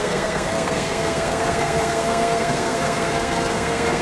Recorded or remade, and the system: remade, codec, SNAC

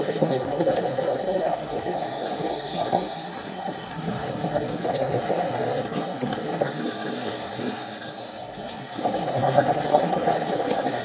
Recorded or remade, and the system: remade, codec, SNAC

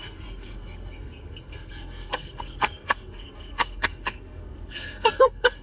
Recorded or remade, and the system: remade, codec, SNAC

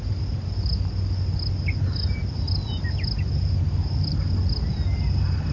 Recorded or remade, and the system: recorded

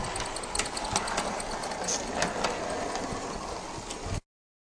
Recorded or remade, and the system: recorded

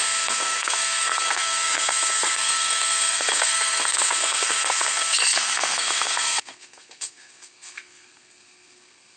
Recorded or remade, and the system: remade, codec, SNAC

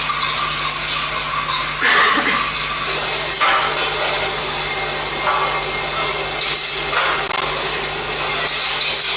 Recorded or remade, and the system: recorded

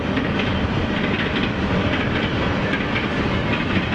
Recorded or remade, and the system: recorded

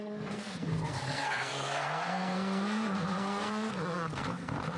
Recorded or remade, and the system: remade, codec, SNAC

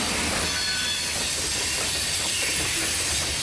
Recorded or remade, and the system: recorded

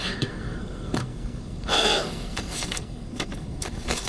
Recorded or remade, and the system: remade, codec, SNAC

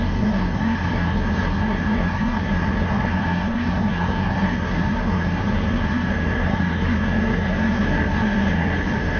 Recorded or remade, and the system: remade, codec, SNAC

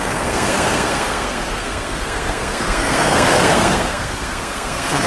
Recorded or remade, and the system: remade, codec, SNAC